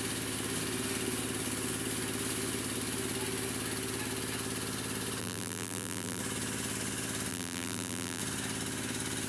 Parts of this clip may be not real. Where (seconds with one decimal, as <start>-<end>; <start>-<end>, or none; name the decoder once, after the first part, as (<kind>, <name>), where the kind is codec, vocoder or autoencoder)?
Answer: 5.2-6.2 (vocoder, BigVGAN v2); 7.3-8.2